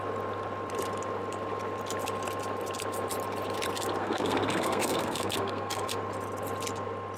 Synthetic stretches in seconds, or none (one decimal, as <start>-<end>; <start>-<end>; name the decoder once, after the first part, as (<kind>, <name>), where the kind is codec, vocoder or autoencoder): 4.0-5.9 (codec, SNAC)